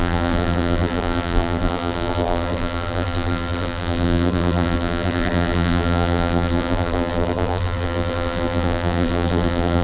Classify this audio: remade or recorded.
remade